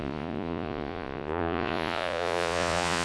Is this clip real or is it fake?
fake